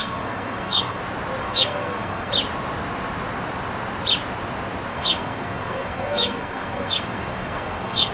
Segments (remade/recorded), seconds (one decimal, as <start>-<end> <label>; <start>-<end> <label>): 0.0-1.0 remade; 1.0-1.4 recorded; 1.4-2.3 remade; 2.3-4.9 recorded; 4.9-8.1 remade